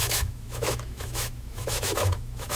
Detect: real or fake fake